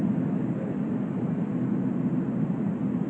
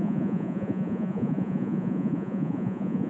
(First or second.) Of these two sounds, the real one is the first